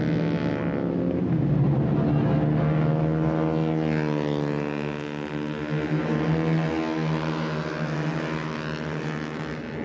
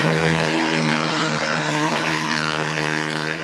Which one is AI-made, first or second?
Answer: second